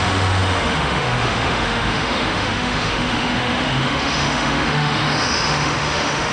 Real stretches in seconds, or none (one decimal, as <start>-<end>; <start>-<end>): none